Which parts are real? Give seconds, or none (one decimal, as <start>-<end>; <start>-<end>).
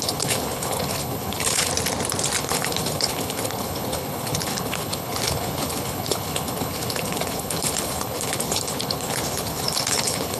1.7-2.4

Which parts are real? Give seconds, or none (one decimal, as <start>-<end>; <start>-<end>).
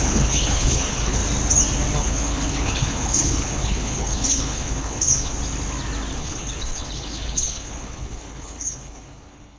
1.2-2.0; 5.3-6.2